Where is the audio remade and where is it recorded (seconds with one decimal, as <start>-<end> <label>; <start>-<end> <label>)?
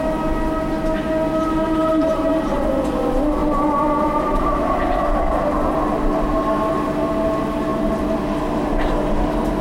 0.0-1.8 recorded; 1.8-3.0 remade; 3.0-9.6 recorded